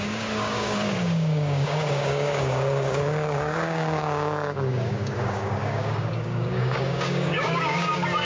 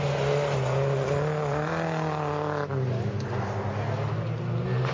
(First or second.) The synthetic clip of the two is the first